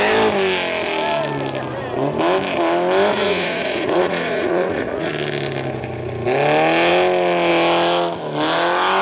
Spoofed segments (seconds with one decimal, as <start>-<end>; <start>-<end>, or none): 3.1-5.1